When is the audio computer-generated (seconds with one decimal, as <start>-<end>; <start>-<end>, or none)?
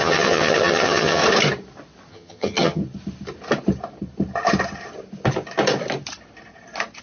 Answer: 0.0-1.2; 2.1-2.8